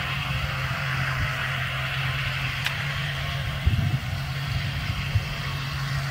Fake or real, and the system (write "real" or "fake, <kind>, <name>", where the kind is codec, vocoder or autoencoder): fake, vocoder, BigVGAN v2